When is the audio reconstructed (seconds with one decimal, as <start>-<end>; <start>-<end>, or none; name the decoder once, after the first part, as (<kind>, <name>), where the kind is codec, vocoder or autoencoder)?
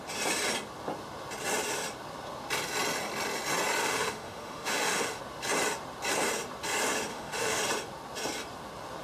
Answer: 3.8-5.2 (autoencoder, DAC-VAE); 7.1-7.6